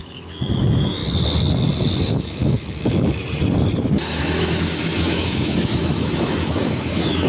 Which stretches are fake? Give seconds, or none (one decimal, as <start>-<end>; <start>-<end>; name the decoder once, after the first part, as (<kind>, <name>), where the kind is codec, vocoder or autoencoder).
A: 0.0-1.0 (autoencoder, DAC-VAE); 2.2-3.2; 4.2-7.3